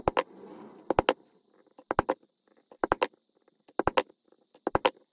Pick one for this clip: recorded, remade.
recorded